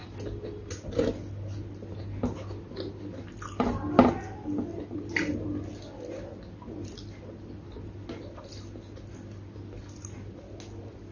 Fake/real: real